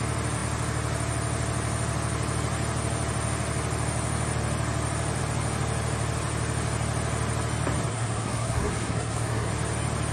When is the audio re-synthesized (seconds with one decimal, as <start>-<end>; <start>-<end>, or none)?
7.9-9.5